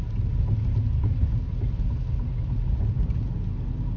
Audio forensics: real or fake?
real